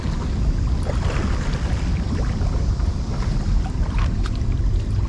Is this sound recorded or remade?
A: remade